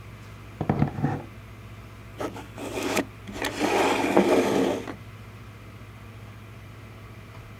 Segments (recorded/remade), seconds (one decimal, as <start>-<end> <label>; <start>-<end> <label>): 0.0-2.1 recorded; 2.1-3.0 remade; 3.0-7.6 recorded